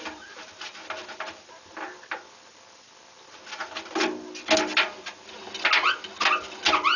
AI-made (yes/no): no